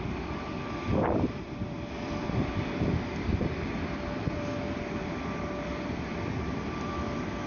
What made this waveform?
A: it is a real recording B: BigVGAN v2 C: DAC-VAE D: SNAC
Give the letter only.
B